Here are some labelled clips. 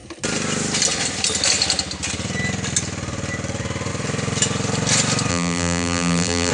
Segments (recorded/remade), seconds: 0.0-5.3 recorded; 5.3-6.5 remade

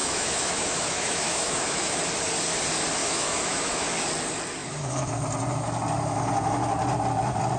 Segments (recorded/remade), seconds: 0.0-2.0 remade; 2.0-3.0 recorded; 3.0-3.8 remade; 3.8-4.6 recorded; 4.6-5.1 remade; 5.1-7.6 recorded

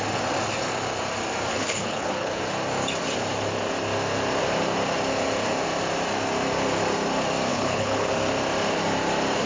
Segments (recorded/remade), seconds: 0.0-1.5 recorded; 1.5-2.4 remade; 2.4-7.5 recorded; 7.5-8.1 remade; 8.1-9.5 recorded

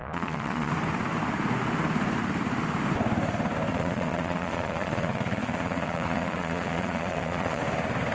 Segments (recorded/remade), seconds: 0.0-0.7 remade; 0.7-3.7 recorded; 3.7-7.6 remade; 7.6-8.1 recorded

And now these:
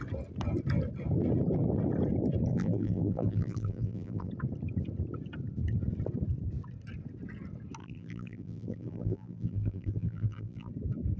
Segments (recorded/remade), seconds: 0.0-2.5 recorded; 2.5-4.3 remade; 4.3-7.8 recorded; 7.8-10.7 remade; 10.7-11.2 recorded